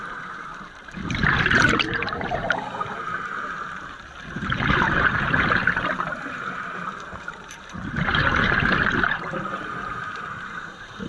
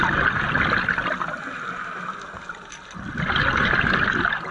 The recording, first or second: second